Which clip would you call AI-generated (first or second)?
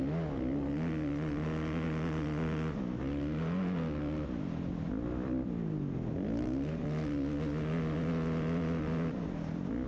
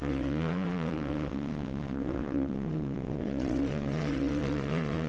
second